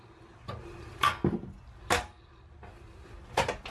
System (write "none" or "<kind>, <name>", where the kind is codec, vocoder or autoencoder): none